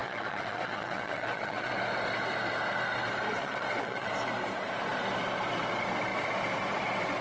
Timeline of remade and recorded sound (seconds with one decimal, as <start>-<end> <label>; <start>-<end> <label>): 0.0-1.7 remade; 1.7-3.4 recorded; 3.4-4.1 remade; 4.1-7.2 recorded